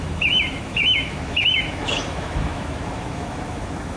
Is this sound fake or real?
fake